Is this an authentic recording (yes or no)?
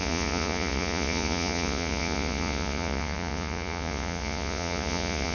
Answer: no